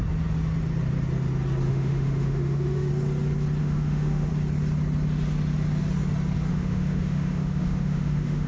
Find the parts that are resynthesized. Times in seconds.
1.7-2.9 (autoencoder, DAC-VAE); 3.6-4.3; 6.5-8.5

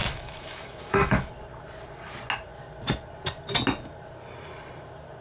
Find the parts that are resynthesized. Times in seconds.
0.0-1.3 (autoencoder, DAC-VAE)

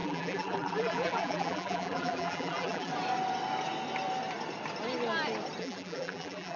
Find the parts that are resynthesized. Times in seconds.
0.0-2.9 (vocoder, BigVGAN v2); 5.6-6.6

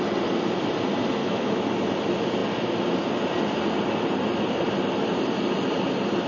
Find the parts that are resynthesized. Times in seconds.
1.2-1.8 (autoencoder, DAC-VAE)

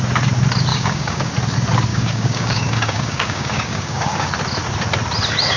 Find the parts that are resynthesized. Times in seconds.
0.7-1.3 (codec, DAC); 1.9-4.3

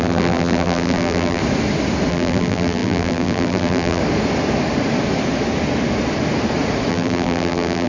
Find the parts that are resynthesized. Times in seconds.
0.0-1.4 (vocoder, BigVGAN v2); 2.1-4.0; 6.9-7.9

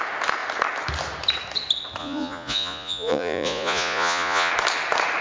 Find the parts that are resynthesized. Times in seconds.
2.0-4.5 (vocoder, Vocos)

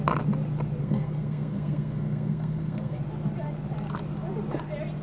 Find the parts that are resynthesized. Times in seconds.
0.8-3.0 (codec, SNAC)